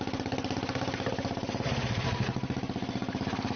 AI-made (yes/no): no